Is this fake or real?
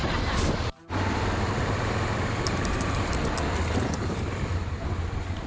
fake